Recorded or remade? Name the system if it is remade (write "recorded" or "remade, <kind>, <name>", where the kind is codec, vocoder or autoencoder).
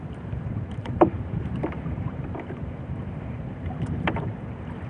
remade, vocoder, BigVGAN v2